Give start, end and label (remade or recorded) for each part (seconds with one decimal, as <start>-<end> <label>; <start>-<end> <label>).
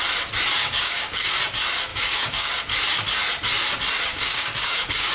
0.0-0.6 recorded; 0.6-1.3 remade; 1.3-1.9 recorded; 1.9-2.6 remade; 2.6-4.1 recorded; 4.1-5.1 remade